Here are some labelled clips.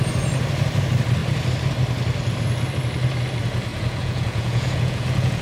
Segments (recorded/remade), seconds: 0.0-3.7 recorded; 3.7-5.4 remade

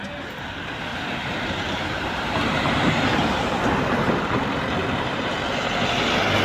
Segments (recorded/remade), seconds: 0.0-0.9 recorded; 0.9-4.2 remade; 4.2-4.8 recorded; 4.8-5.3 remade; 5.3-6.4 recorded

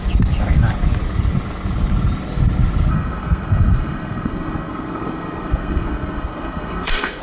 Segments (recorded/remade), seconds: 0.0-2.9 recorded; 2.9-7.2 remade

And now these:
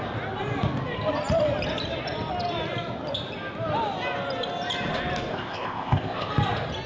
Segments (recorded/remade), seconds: 0.0-5.3 recorded; 5.3-6.3 remade; 6.3-6.9 recorded

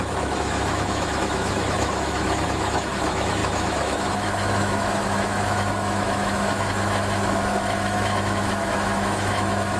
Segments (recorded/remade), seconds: 0.0-9.8 remade